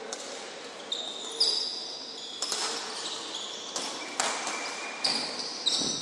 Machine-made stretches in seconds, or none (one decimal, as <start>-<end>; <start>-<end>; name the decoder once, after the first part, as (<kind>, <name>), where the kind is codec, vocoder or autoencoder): none